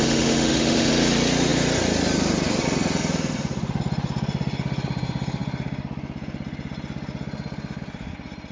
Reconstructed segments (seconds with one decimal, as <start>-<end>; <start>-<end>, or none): 0.0-0.9